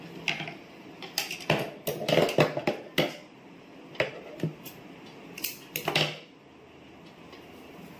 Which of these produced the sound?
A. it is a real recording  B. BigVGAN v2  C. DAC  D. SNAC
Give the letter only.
A